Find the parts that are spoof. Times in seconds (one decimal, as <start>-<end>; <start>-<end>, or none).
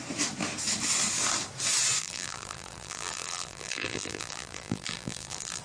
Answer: 2.0-5.6